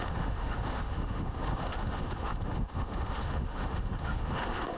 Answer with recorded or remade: remade